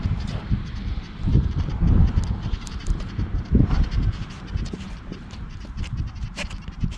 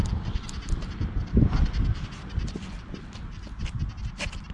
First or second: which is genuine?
second